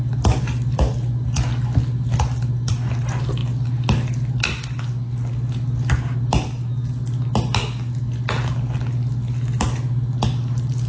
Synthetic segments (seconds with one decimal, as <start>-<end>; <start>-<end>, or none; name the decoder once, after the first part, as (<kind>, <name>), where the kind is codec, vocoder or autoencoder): none